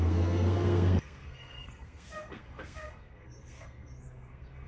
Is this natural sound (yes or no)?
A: no